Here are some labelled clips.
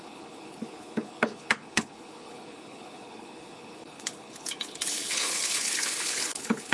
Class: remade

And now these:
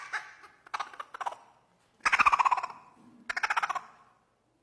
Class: recorded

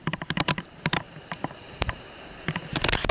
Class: remade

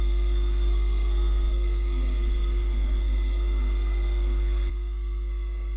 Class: remade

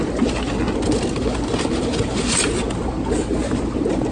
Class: recorded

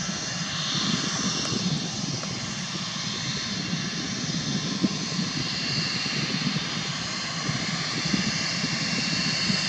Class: recorded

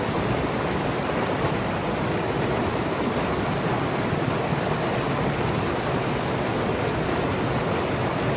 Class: recorded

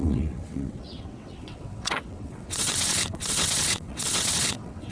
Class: remade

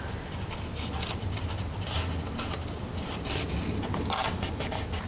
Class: recorded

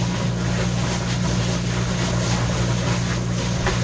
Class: recorded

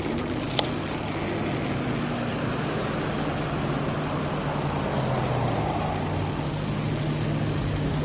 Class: recorded